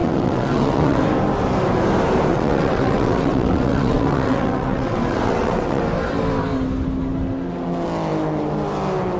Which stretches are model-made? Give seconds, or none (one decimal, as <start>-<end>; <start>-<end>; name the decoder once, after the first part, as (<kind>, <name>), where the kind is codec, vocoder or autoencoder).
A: 0.0-1.0 (vocoder, WaveNeXt); 2.3-5.8